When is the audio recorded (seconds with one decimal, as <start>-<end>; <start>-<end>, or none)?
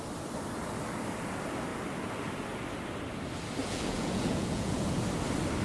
0.0-3.6; 4.8-5.6